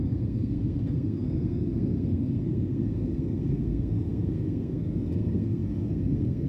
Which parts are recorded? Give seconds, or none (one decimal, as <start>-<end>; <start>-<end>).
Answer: none